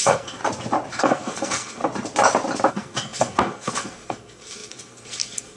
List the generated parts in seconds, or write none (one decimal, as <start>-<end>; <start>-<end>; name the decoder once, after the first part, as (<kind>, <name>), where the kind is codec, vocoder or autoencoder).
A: 0.0-0.4 (codec, SNAC); 0.9-1.8; 2.7-5.6